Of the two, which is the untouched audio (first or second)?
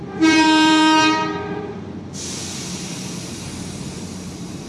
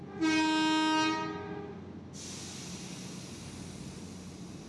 second